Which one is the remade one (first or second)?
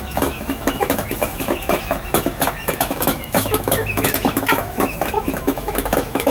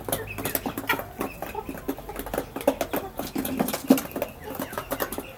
first